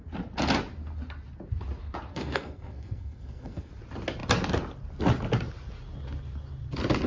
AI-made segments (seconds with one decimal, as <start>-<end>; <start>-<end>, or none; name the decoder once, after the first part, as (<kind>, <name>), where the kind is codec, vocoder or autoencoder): 2.1-3.7 (codec, SNAC)